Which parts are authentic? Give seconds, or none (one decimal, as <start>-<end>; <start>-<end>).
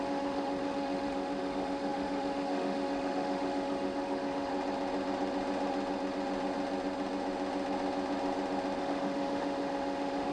4.5-8.8